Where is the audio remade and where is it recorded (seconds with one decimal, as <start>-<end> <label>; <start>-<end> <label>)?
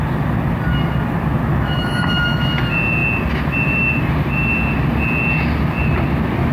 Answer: 0.0-1.5 recorded; 1.5-2.6 remade; 2.6-6.5 recorded